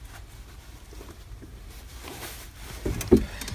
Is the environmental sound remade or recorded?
recorded